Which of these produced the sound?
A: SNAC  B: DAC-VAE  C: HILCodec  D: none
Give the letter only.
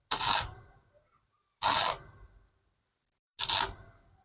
D